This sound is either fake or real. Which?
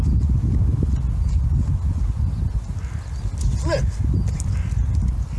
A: real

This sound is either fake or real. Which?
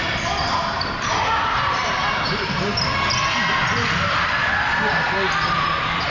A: real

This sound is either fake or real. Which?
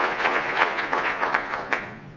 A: fake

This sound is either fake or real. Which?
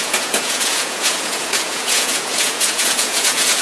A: fake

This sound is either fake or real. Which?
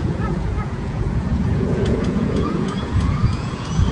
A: fake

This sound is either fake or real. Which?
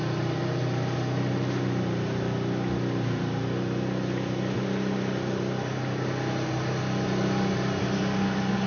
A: real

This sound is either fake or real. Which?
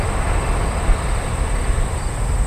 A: real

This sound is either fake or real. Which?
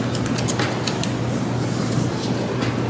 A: real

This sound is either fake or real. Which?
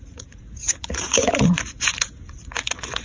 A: fake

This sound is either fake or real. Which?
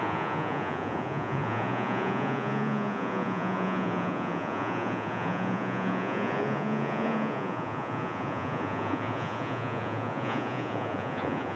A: fake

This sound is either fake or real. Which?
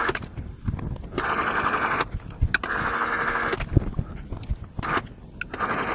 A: real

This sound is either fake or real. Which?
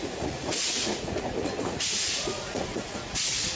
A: fake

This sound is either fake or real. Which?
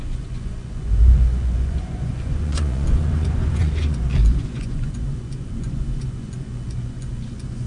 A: fake